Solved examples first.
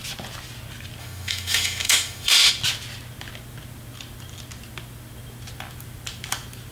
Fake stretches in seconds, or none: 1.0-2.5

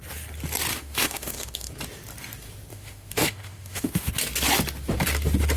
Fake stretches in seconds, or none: 0.7-1.7; 2.7-4.1

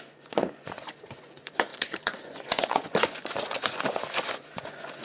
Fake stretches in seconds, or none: 0.0-5.0